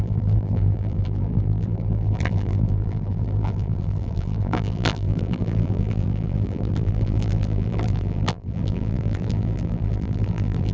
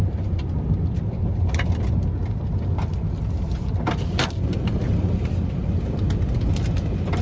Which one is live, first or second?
second